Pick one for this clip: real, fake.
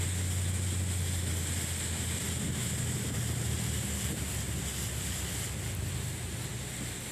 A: real